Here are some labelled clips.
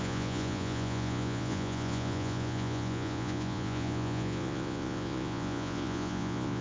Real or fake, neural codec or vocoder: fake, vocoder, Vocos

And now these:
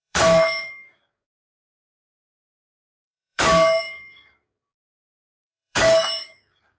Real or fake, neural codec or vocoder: fake, codec, DAC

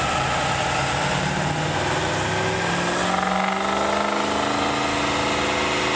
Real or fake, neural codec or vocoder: real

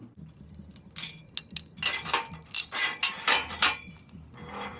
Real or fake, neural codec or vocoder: real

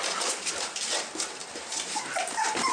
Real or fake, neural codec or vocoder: fake, vocoder, BigVGAN v2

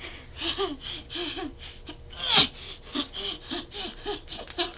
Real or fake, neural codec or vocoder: real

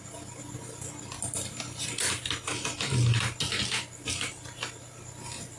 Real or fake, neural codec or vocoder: real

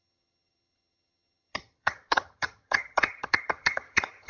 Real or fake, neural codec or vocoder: fake, vocoder, HiFi-GAN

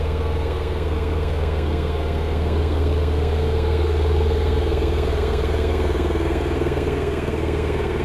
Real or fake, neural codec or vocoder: fake, codec, SNAC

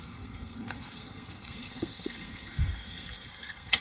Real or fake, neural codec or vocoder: fake, codec, SNAC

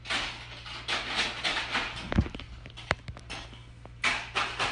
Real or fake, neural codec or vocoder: real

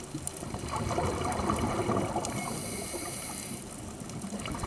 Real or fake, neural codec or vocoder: real